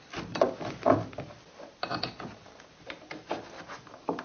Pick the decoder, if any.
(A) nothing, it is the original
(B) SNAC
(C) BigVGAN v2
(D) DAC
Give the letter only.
A